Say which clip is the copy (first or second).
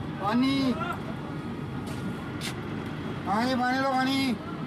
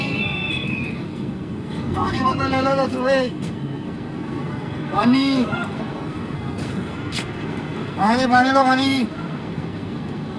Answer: second